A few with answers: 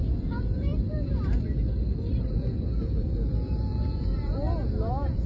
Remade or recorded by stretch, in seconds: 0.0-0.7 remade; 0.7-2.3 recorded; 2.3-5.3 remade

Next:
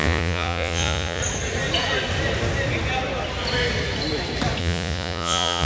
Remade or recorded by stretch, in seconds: 0.0-1.2 remade; 1.2-4.6 recorded; 4.6-5.7 remade

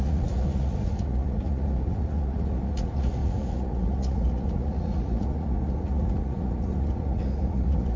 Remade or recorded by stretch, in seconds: 0.0-8.0 remade

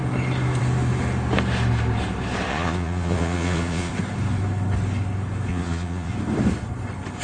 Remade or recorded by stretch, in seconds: 0.0-2.5 recorded; 2.5-3.9 remade; 3.9-5.5 recorded; 5.5-6.1 remade; 6.1-7.2 recorded

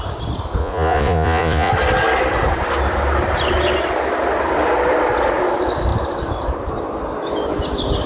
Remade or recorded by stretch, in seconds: 0.0-0.6 recorded; 0.6-1.7 remade; 1.7-8.1 recorded

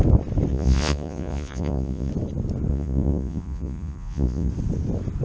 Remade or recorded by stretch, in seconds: 0.0-0.5 recorded; 0.5-2.1 remade; 2.1-2.7 recorded; 2.7-4.5 remade; 4.5-5.2 recorded

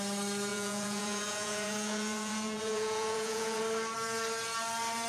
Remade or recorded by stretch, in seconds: 0.0-0.5 recorded; 0.5-3.6 remade; 3.6-5.1 recorded

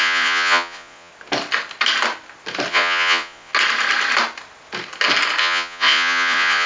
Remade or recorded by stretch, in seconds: 0.0-1.1 remade; 1.1-2.7 recorded; 2.7-3.5 remade; 3.5-5.4 recorded; 5.4-6.7 remade